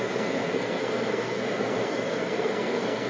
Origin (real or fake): fake